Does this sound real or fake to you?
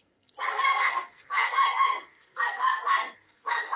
fake